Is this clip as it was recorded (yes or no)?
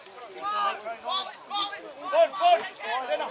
yes